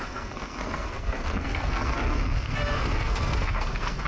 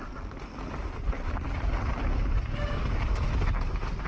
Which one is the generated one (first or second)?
first